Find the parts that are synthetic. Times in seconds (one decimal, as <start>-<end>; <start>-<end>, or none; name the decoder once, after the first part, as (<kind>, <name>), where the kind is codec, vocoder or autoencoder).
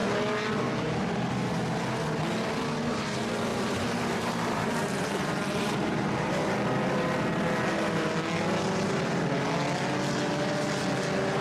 3.5-6.3 (vocoder, BigVGAN v2)